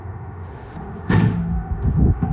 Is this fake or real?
fake